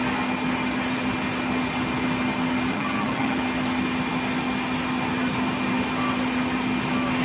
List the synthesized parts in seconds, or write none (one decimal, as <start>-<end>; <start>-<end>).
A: 2.7-3.4